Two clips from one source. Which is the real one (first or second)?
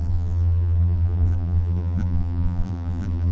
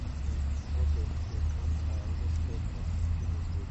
second